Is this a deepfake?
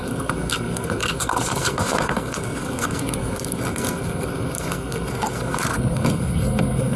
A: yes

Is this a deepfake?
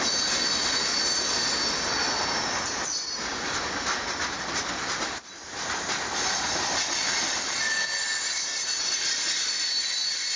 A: no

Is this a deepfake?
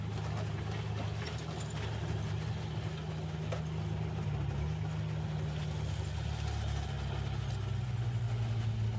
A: no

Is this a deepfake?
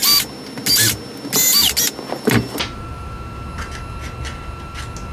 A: no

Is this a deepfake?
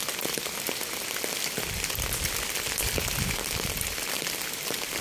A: no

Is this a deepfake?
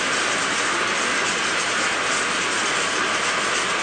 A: no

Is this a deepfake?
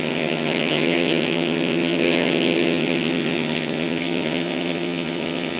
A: yes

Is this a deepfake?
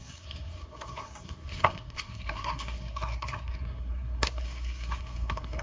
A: yes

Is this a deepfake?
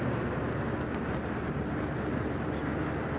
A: no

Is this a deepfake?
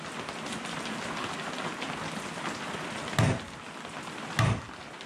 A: no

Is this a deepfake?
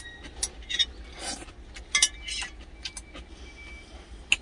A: no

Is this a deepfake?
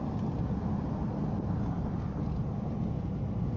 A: no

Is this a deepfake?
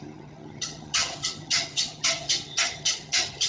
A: yes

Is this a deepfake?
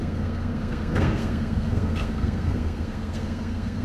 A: yes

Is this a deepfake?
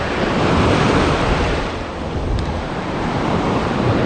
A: yes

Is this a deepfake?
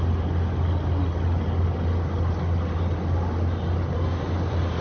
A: no